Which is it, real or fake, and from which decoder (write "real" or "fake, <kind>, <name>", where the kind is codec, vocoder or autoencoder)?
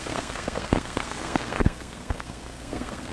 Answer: fake, codec, SNAC